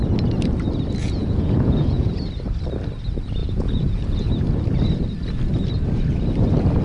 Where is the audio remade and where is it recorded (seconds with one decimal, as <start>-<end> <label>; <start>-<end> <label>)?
0.0-1.0 recorded; 1.0-2.1 remade; 2.1-3.4 recorded; 3.4-4.3 remade; 4.3-6.8 recorded